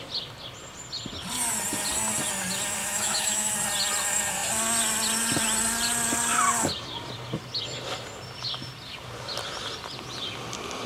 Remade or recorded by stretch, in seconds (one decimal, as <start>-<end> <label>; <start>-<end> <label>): 0.0-2.8 recorded; 2.8-3.5 remade; 3.5-10.9 recorded